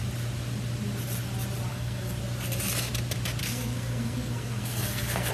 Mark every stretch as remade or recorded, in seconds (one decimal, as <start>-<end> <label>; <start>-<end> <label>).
0.0-1.7 recorded; 1.7-2.2 remade; 2.2-3.4 recorded; 3.4-5.3 remade